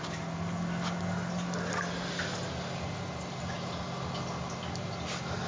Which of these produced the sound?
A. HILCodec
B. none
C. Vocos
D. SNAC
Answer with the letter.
B